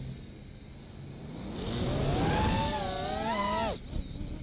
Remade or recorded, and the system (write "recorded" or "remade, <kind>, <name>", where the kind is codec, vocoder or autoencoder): recorded